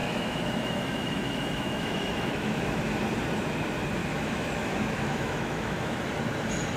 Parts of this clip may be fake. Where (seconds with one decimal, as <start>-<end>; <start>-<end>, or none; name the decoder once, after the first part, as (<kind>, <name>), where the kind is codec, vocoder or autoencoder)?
0.0-2.8 (autoencoder, DAC-VAE); 4.0-6.1